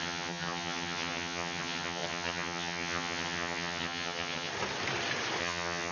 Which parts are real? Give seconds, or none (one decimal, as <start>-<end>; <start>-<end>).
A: 4.5-5.4